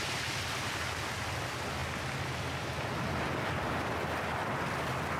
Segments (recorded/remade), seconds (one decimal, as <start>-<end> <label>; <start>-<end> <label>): 0.0-5.2 recorded